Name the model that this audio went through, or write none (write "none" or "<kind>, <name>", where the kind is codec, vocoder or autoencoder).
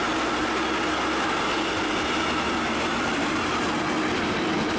none